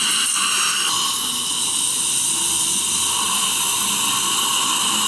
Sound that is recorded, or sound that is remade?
recorded